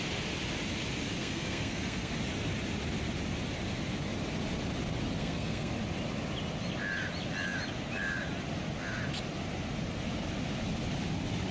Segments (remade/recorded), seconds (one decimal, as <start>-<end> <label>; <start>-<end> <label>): 0.0-1.2 recorded; 1.2-2.1 remade; 2.1-5.2 recorded; 5.2-5.7 remade; 5.7-11.5 recorded